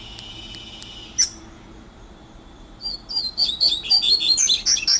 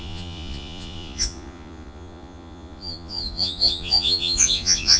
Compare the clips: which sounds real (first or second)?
first